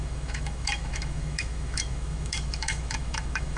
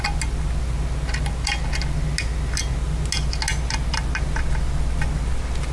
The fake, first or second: first